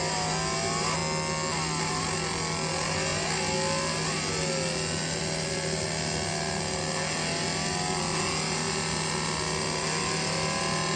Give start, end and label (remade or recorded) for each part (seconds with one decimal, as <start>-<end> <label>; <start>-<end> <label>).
0.0-11.0 recorded